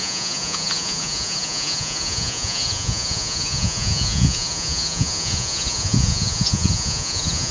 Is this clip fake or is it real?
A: fake